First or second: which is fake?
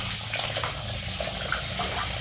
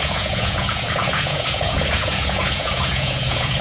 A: second